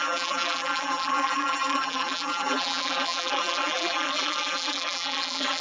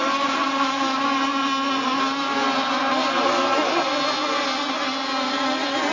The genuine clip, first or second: second